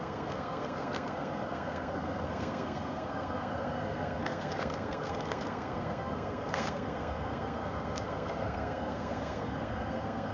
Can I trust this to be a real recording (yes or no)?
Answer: no